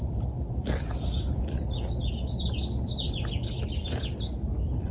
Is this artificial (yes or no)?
no